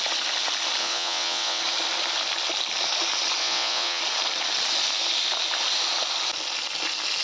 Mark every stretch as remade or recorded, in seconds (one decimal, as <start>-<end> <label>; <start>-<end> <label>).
0.0-0.8 recorded; 0.8-1.6 remade; 1.6-3.4 recorded; 3.4-4.0 remade; 4.0-7.2 recorded